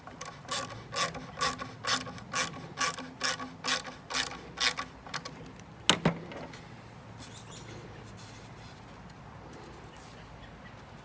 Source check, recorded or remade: recorded